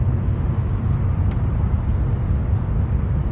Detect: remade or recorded recorded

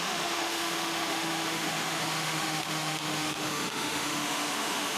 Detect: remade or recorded remade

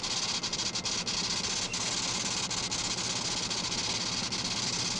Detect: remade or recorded recorded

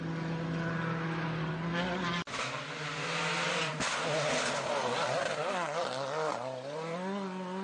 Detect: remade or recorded recorded